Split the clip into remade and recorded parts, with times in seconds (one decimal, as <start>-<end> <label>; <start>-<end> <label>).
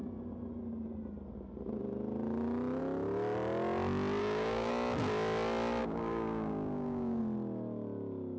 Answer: 0.0-4.2 recorded; 4.2-4.7 remade; 4.7-5.8 recorded; 5.8-7.2 remade; 7.2-8.4 recorded